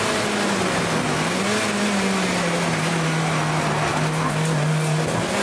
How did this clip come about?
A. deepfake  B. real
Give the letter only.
B